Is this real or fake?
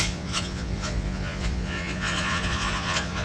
fake